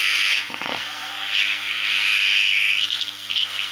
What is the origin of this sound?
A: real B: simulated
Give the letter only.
B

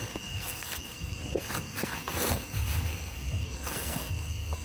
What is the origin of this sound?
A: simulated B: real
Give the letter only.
A